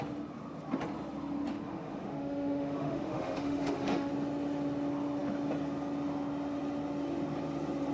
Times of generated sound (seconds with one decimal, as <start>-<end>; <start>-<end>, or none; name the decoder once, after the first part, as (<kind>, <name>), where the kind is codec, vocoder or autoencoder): 1.5-4.1 (autoencoder, DAC-VAE)